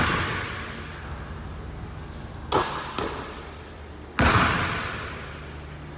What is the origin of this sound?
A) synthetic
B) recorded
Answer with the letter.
B